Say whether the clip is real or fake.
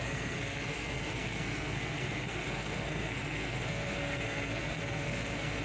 fake